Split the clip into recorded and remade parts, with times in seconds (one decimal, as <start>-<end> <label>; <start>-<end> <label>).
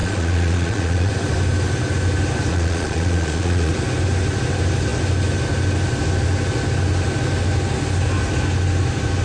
0.0-1.1 remade; 1.1-2.5 recorded; 2.5-3.7 remade; 3.7-9.2 recorded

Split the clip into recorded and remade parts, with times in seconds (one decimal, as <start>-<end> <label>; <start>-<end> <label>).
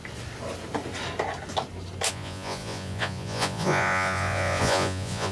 0.0-2.1 recorded; 2.1-5.3 remade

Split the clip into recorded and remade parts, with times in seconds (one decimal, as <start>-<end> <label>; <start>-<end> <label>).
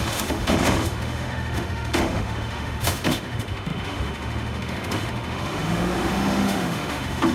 0.0-7.3 remade